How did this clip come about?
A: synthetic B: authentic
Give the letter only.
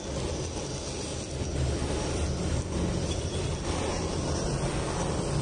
B